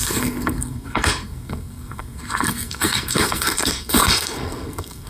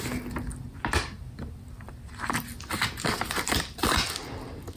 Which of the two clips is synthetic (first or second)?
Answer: first